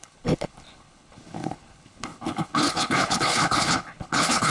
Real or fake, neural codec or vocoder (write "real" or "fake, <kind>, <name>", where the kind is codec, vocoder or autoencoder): fake, codec, HILCodec